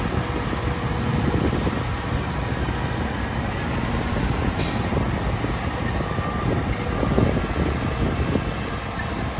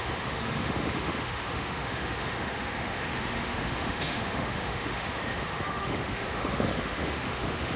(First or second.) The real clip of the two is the first